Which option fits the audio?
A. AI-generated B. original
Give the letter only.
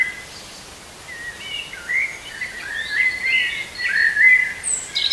B